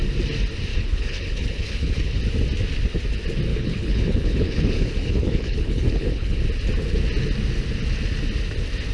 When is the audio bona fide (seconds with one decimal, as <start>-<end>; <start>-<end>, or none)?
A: 0.0-0.7; 2.2-3.5; 6.4-8.9